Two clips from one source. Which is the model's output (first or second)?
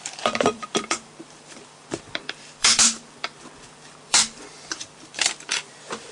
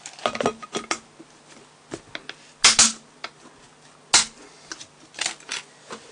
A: first